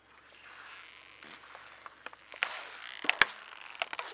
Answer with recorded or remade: recorded